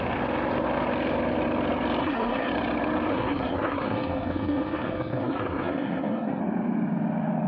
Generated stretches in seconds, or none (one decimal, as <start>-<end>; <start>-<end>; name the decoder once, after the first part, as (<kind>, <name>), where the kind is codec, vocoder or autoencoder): 2.0-2.5 (codec, SNAC); 3.1-6.4

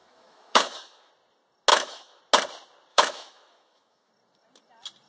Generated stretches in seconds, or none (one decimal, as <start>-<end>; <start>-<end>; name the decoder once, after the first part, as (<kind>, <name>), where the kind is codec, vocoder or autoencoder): 0.0-1.1 (autoencoder, DAC-VAE); 1.7-2.2; 2.9-4.1

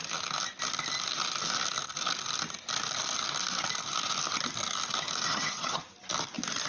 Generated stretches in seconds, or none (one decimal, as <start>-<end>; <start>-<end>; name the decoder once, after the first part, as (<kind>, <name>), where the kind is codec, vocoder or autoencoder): 5.3-5.8 (vocoder, HiFi-GAN)

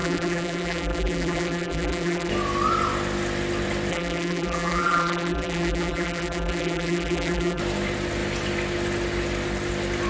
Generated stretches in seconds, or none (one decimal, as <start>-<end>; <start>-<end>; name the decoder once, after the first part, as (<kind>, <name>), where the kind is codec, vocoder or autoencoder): 0.0-2.3 (vocoder, BigVGAN v2); 3.9-7.6